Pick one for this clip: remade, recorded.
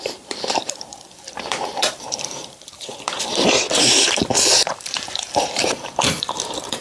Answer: remade